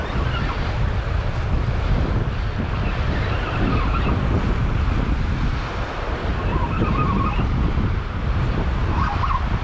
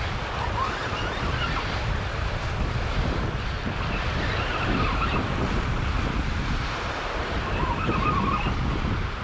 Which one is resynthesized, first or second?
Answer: second